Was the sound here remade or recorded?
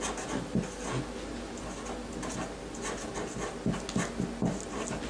recorded